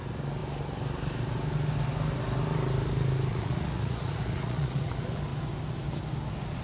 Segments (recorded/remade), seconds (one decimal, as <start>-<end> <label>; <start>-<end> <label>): 0.0-3.3 recorded; 3.3-4.8 remade; 4.8-6.6 recorded